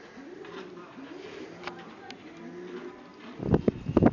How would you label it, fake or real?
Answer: real